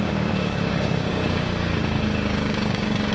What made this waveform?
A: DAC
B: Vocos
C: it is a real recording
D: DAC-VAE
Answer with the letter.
A